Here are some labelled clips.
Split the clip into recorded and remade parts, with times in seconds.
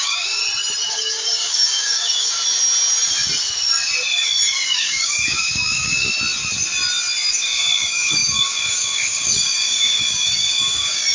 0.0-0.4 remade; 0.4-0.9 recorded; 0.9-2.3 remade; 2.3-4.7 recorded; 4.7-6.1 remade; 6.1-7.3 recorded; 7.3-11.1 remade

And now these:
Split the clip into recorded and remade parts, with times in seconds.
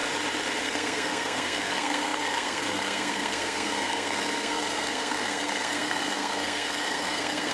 0.0-0.6 recorded; 0.6-7.5 remade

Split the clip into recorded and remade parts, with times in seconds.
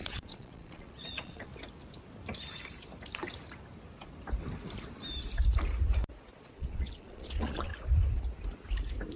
0.0-1.5 remade; 1.5-6.4 recorded; 6.4-7.7 remade; 7.7-9.2 recorded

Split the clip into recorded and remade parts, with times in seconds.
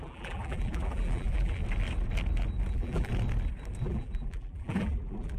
0.0-1.6 remade; 1.6-2.7 recorded; 2.7-3.1 remade; 3.1-3.8 recorded; 3.8-5.4 remade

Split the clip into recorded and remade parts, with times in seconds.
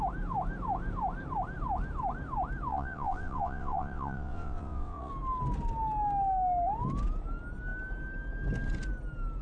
0.0-2.7 recorded; 2.7-5.1 remade; 5.1-9.4 recorded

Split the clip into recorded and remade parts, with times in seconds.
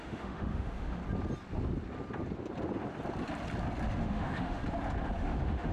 0.0-1.0 remade; 1.0-4.0 recorded; 4.0-4.6 remade; 4.6-5.2 recorded; 5.2-5.7 remade